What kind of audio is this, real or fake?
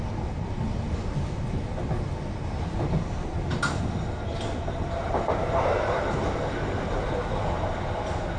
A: real